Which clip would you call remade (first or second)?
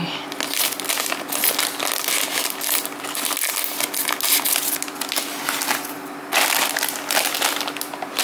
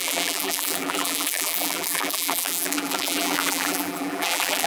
second